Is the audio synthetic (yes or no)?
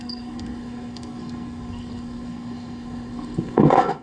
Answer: yes